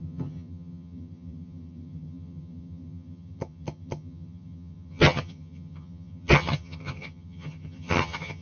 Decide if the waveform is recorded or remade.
remade